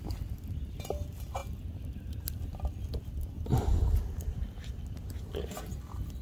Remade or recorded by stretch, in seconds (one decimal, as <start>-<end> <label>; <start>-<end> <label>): 0.0-6.2 recorded